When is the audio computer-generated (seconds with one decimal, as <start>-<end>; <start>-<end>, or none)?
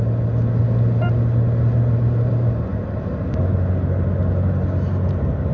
none